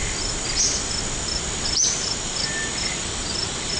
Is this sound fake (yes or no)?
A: no